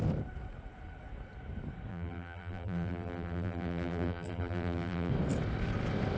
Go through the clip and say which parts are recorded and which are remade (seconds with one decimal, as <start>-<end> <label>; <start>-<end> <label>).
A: 0.0-1.9 recorded; 1.9-5.1 remade; 5.1-6.2 recorded